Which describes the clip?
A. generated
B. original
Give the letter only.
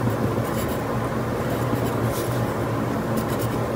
B